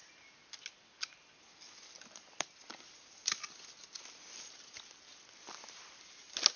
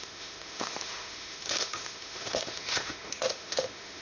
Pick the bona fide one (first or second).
first